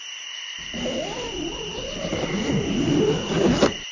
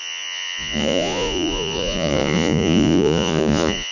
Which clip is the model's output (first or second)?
second